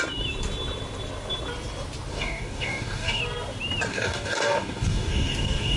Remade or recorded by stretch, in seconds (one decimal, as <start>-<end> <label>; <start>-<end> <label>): 0.0-2.1 recorded; 2.1-3.2 remade; 3.2-3.9 recorded; 3.9-5.8 remade